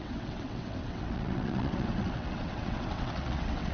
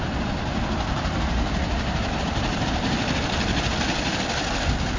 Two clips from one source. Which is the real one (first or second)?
second